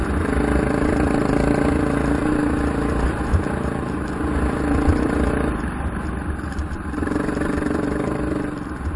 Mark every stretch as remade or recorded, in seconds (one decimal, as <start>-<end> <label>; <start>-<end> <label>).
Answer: 0.0-9.0 recorded